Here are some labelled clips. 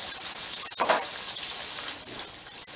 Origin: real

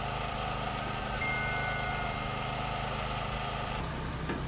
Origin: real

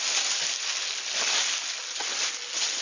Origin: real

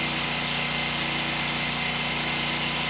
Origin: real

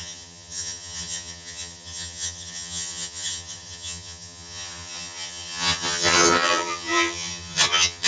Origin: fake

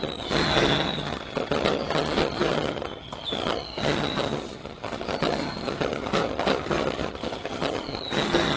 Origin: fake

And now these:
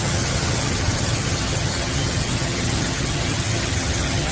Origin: fake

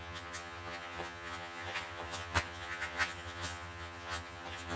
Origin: fake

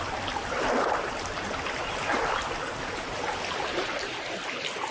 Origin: real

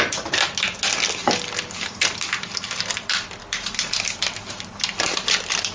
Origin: real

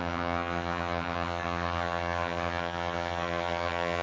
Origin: fake